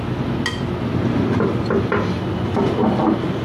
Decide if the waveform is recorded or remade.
recorded